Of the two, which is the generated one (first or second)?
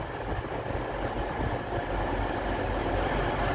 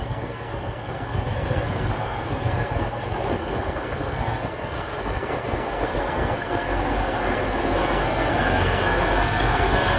second